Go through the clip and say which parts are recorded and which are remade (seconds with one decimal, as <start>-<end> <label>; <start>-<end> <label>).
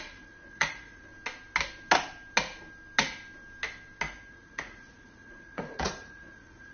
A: 0.0-1.1 remade; 1.1-4.3 recorded; 4.3-6.7 remade